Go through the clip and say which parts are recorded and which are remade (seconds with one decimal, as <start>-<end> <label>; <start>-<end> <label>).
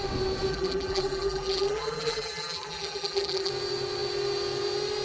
0.0-0.5 recorded; 0.5-3.5 remade; 3.5-5.0 recorded